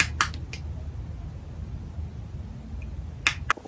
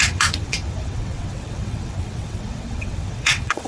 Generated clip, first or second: second